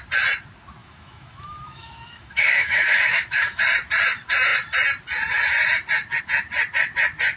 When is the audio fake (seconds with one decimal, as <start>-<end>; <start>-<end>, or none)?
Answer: 0.8-3.6